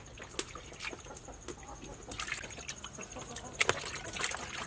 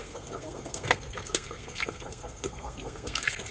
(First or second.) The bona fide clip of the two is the first